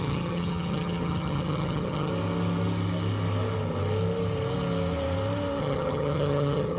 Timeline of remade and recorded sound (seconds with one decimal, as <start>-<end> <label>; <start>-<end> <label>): 0.0-2.1 remade; 2.1-5.6 recorded; 5.6-6.8 remade